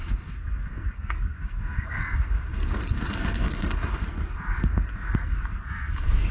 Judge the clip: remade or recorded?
remade